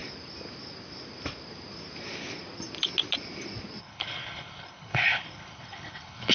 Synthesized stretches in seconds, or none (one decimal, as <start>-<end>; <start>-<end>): 3.8-6.3